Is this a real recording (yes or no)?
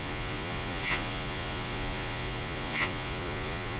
no